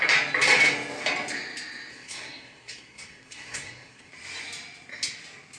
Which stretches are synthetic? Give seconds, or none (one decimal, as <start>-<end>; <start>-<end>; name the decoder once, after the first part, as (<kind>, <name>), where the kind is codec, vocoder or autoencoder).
1.9-4.1 (codec, SNAC)